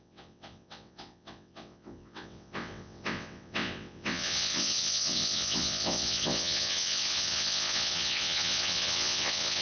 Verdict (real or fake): fake